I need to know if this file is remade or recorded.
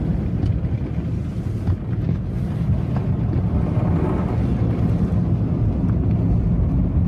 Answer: recorded